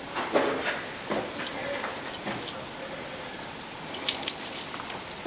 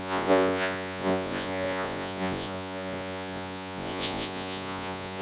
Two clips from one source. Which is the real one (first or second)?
first